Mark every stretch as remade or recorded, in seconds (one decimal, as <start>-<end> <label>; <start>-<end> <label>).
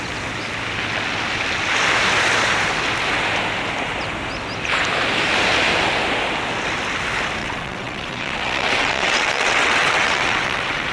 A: 0.0-7.4 recorded; 7.4-10.9 remade